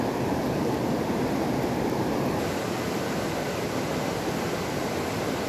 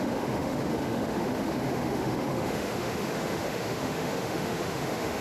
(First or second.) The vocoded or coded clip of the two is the second